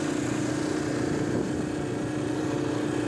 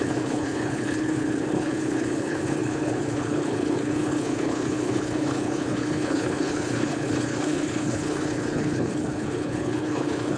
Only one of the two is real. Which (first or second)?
first